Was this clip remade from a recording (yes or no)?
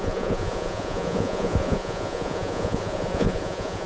yes